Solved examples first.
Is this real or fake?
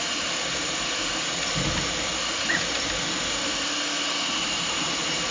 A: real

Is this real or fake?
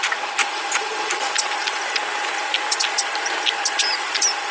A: real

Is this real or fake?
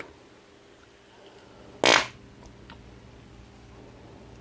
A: real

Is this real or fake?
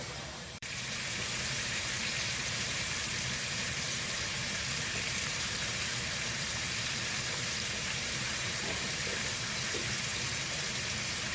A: fake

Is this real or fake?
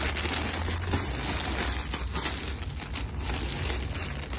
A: real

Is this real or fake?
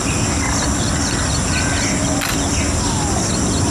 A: real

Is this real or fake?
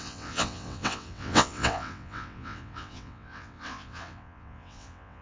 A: fake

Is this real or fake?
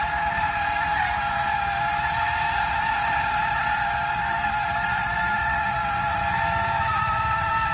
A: real